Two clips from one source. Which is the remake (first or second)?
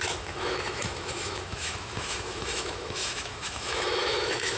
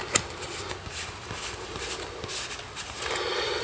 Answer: first